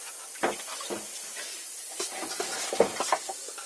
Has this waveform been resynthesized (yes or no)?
no